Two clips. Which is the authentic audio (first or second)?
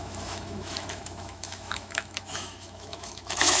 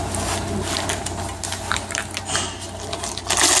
second